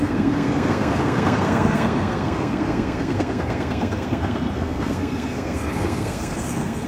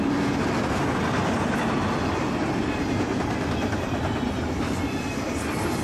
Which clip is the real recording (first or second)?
second